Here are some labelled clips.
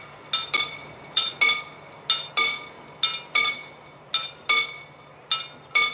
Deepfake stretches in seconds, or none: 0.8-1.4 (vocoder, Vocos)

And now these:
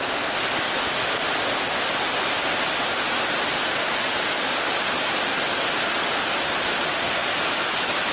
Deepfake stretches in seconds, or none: none

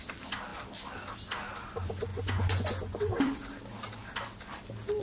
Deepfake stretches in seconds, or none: 2.1-3.1 (vocoder, Vocos)

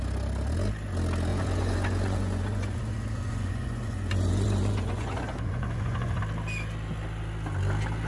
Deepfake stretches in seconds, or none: 1.3-6.2 (vocoder, Vocos)

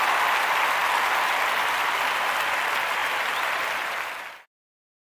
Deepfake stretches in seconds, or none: none

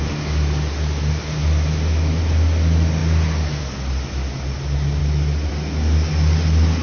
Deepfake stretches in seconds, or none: none